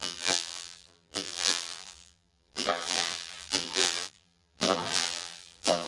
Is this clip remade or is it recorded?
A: remade